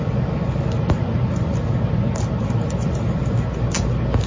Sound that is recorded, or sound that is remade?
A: recorded